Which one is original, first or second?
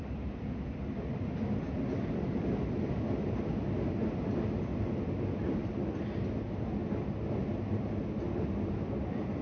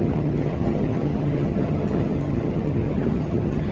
first